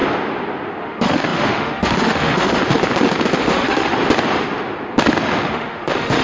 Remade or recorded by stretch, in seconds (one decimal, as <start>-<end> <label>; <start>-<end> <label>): 0.0-0.8 recorded; 0.8-2.6 remade; 2.6-3.4 recorded; 3.4-3.9 remade; 3.9-5.5 recorded; 5.5-6.2 remade